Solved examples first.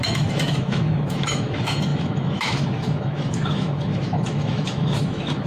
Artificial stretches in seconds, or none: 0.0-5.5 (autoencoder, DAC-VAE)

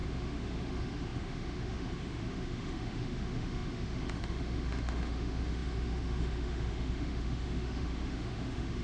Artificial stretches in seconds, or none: 0.0-8.8 (autoencoder, DAC-VAE)

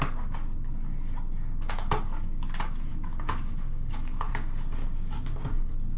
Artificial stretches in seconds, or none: 2.9-4.3 (autoencoder, DAC-VAE)

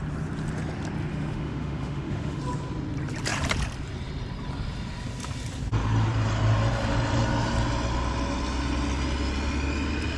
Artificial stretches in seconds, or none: 1.1-2.4 (autoencoder, DAC-VAE)

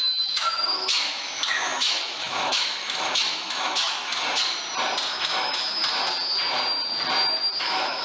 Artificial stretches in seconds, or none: 0.0-4.1 (autoencoder, DAC-VAE); 5.1-5.8; 7.6-8.0

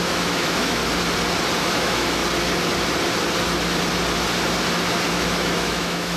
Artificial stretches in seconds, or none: 0.0-0.8 (autoencoder, DAC-VAE); 1.6-2.2; 5.1-6.2

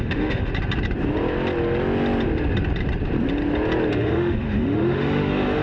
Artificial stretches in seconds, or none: 0.0-0.5 (autoencoder, DAC-VAE); 3.9-5.6